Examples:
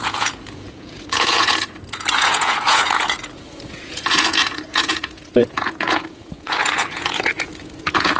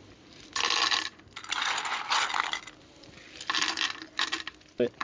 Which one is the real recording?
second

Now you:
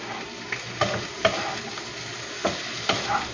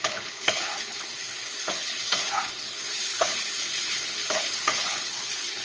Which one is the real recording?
first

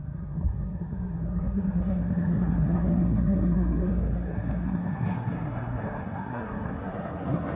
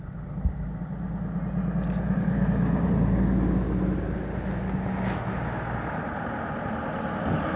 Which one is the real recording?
second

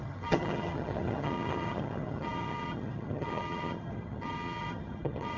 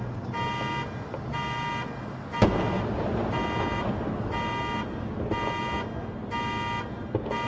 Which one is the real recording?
second